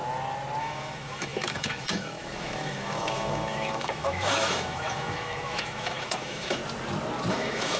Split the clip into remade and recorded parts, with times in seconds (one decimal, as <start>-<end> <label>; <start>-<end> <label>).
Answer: 0.0-0.6 recorded; 0.6-6.6 remade; 6.6-7.3 recorded; 7.3-7.8 remade